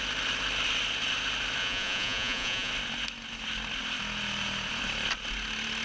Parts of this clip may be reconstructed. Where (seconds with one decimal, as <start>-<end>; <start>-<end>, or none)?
1.6-2.7